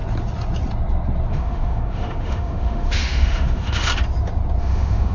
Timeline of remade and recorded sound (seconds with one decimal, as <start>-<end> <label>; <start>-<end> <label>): 0.0-1.3 recorded; 1.3-3.9 remade; 3.9-4.6 recorded; 4.6-5.1 remade